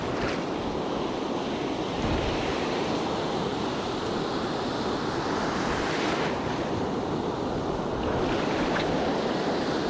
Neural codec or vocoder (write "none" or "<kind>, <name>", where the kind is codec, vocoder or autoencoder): none